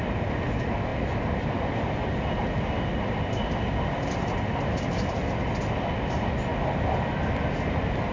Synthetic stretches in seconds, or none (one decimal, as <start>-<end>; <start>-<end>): none